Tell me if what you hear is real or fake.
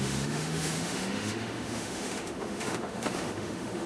fake